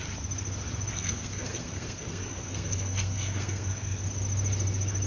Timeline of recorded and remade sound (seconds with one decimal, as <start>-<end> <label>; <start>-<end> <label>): 0.0-0.9 recorded; 0.9-4.0 remade; 4.0-5.1 recorded